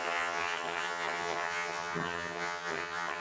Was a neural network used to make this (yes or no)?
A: yes